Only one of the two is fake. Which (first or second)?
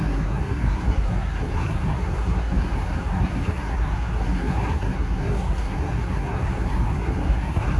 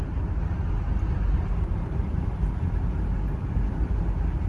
first